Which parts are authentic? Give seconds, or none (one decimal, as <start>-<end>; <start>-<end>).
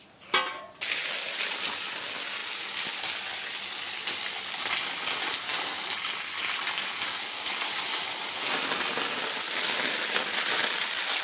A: 0.0-11.2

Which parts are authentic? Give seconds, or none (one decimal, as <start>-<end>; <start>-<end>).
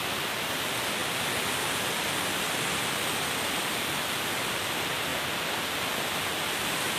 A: 0.0-7.0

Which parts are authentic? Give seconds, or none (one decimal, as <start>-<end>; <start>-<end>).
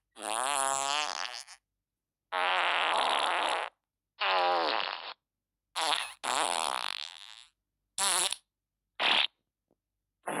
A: 0.0-10.4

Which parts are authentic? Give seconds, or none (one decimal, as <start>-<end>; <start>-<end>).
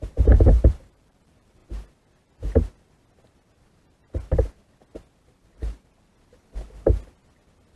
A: 1.6-5.2; 6.1-7.8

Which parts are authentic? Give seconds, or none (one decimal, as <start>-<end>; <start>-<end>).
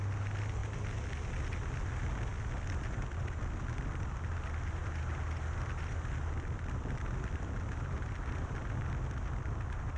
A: 0.0-0.6; 1.1-2.3; 2.8-10.0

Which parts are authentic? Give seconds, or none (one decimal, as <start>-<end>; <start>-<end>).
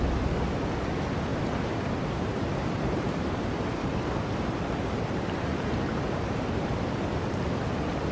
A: 0.0-1.3; 4.6-5.9; 7.4-8.1